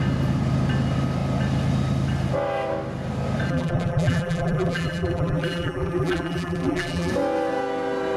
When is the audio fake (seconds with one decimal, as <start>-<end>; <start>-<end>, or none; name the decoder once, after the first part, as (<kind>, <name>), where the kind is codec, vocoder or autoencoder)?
3.5-7.1 (vocoder, BigVGAN v2)